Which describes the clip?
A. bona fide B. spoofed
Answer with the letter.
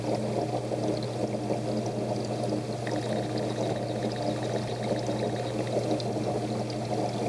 A